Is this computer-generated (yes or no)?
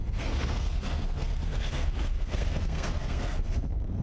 yes